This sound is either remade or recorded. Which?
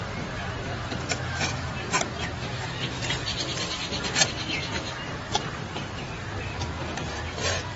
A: recorded